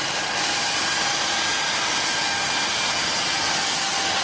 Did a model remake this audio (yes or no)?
no